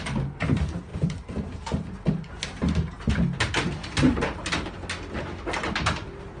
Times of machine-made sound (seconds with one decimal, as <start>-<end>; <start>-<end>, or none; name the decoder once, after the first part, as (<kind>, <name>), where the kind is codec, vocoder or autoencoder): 0.9-4.7 (vocoder, BigVGAN v2)